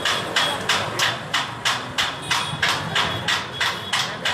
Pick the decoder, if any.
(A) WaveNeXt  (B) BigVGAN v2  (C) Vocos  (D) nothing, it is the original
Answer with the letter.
D